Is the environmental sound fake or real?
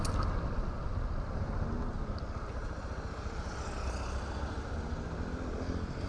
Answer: real